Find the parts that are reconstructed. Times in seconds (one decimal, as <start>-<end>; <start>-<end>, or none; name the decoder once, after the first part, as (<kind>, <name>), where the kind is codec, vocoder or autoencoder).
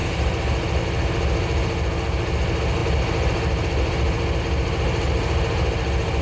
none